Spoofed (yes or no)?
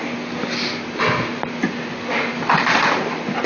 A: no